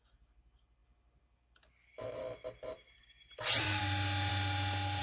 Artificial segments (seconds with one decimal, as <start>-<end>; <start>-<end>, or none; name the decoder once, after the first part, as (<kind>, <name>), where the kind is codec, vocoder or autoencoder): 0.8-3.8 (vocoder, BigVGAN v2)